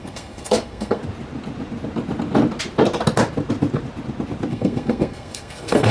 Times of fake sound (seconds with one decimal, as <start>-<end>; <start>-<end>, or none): 0.0-1.0; 4.5-5.9